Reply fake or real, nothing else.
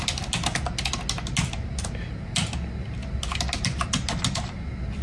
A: real